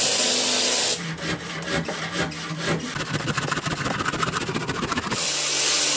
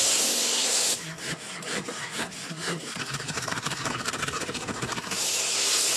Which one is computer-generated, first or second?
second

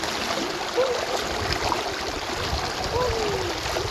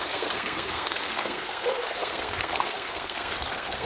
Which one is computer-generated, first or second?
second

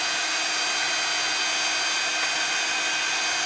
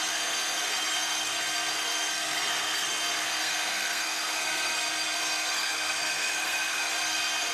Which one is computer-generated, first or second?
second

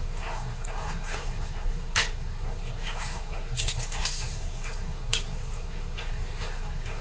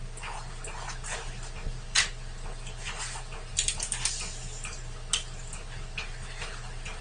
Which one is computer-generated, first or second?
first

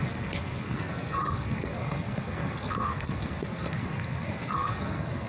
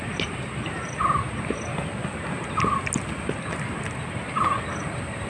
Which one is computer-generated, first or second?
first